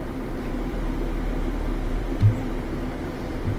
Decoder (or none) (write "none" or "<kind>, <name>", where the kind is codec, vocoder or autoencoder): vocoder, BigVGAN v2